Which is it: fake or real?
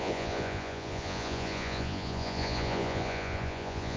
fake